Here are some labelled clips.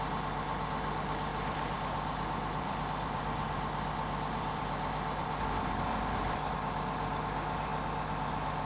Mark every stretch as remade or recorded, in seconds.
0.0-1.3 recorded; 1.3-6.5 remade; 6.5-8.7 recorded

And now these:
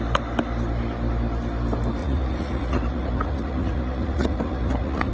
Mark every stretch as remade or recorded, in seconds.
0.0-2.0 recorded; 2.0-5.1 remade

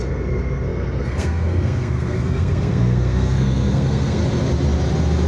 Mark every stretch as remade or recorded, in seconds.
0.0-4.2 remade; 4.2-5.3 recorded

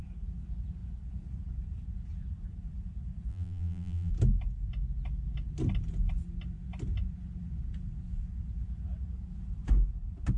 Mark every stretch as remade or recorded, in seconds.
0.0-3.3 recorded; 3.3-4.1 remade; 4.1-10.4 recorded

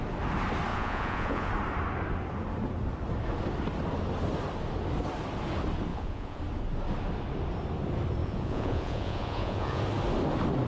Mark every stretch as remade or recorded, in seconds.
0.0-0.7 recorded; 0.7-1.5 remade; 1.5-5.9 recorded; 5.9-6.4 remade; 6.4-8.2 recorded; 8.2-9.8 remade; 9.8-10.7 recorded

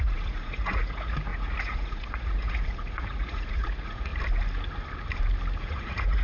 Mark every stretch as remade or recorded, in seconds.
0.0-4.1 remade; 4.1-5.6 recorded; 5.6-6.2 remade